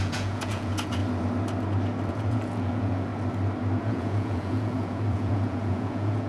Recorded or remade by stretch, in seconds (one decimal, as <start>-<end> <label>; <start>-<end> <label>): 0.0-1.0 remade; 1.0-2.1 recorded; 2.1-3.1 remade; 3.1-3.8 recorded; 3.8-6.3 remade